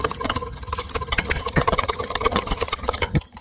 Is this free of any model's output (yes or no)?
no